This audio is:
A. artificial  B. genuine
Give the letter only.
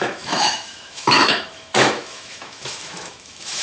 A